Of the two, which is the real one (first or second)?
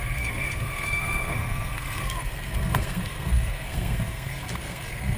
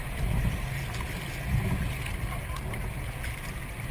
second